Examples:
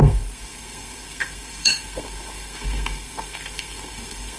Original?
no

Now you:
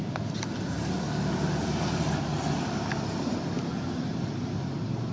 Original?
yes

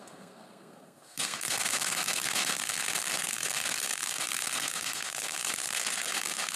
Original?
no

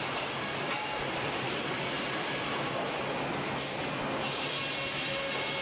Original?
yes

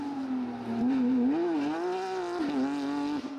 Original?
yes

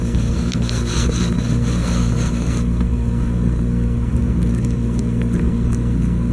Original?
no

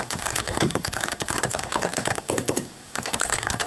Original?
no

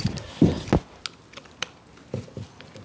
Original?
yes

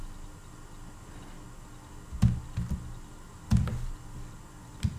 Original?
yes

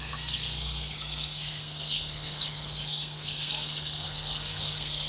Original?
no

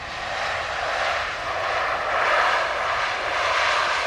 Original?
yes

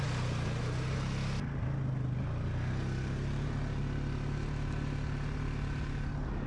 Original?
yes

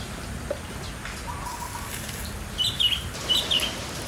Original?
yes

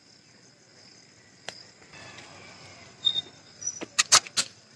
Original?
yes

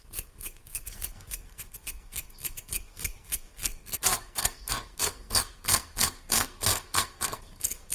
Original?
no